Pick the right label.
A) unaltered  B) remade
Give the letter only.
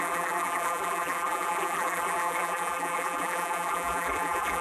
B